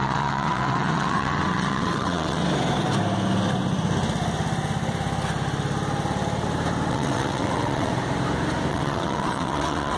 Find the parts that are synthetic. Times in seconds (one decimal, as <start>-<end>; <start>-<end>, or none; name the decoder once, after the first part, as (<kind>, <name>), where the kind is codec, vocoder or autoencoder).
0.0-2.4 (vocoder, WaveNeXt); 6.9-7.9; 8.7-10.0

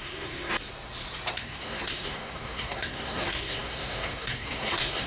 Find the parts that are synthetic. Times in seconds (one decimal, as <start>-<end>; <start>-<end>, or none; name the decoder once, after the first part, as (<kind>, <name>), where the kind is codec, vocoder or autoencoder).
0.0-0.5 (codec, SNAC); 1.3-5.1

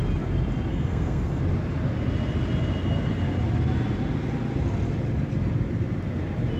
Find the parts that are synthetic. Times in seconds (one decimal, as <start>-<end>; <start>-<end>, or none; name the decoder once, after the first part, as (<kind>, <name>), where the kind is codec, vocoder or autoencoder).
0.7-1.4 (codec, SNAC)